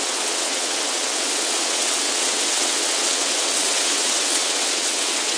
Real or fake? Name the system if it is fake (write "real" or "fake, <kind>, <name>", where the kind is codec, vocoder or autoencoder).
fake, vocoder, WaveNeXt